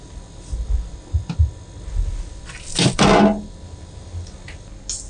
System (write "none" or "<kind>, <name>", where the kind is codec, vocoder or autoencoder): none